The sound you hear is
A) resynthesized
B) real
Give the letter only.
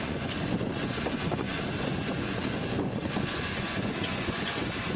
A